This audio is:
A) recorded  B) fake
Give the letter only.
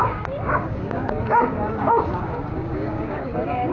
B